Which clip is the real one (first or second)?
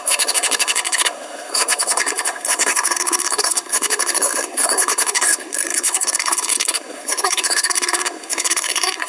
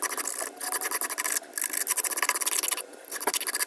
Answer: second